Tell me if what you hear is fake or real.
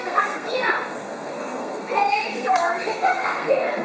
fake